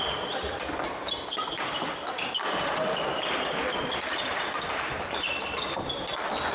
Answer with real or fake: real